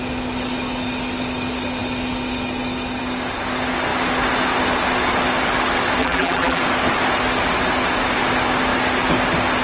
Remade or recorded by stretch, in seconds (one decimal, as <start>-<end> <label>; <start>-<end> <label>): 0.0-6.0 recorded; 6.0-6.6 remade; 6.6-9.6 recorded